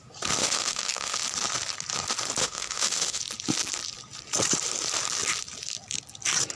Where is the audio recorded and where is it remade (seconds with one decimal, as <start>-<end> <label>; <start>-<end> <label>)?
0.0-0.4 recorded; 0.4-1.2 remade; 1.2-2.4 recorded; 2.4-3.2 remade; 3.2-6.6 recorded